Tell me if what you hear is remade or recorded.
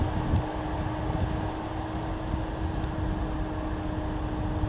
recorded